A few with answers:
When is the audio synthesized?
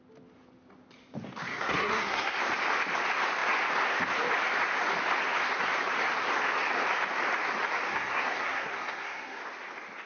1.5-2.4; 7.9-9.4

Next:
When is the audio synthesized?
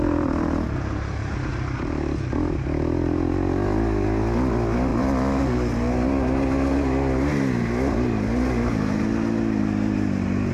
none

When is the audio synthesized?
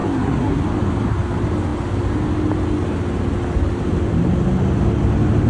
0.0-0.6